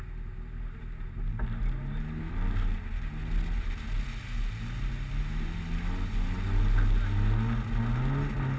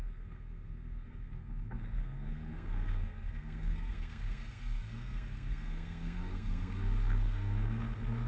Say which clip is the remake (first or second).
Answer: second